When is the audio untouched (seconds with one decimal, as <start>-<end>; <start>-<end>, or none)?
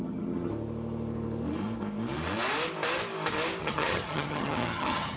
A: 0.5-3.6